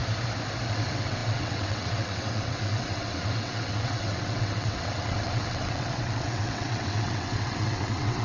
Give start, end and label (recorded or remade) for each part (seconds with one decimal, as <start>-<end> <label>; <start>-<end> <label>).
0.0-0.7 recorded; 0.7-8.2 remade